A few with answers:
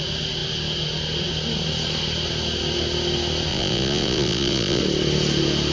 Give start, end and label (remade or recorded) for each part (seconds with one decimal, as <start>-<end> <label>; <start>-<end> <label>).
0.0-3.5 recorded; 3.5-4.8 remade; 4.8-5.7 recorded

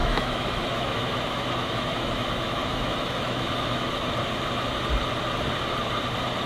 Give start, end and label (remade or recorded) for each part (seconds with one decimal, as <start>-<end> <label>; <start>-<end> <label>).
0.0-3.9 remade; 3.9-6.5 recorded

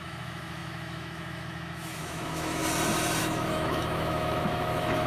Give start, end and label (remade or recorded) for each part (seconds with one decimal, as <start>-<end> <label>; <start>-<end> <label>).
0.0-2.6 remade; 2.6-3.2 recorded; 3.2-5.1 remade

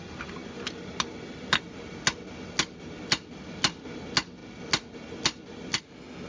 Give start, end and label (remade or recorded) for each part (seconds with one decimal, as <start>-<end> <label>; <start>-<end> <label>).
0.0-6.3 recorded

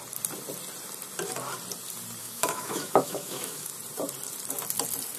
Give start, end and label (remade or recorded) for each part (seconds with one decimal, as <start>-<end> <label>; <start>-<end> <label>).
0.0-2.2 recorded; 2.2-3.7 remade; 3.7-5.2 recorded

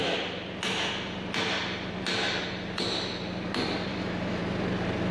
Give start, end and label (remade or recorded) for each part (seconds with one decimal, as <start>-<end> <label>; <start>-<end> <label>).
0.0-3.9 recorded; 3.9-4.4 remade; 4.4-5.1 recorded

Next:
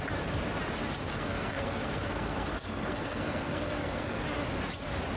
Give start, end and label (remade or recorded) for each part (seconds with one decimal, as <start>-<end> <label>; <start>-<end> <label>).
0.0-1.1 recorded; 1.1-4.2 remade; 4.2-5.2 recorded